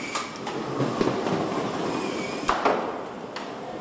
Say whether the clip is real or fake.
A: real